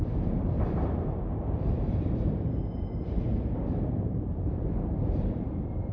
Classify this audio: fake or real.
fake